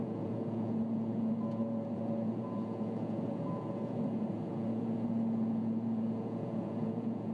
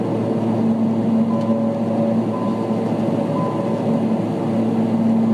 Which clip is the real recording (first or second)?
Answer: second